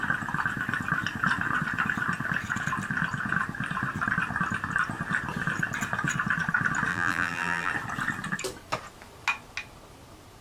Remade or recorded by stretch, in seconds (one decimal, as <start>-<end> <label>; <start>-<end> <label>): 0.0-6.9 recorded; 6.9-7.7 remade; 7.7-10.4 recorded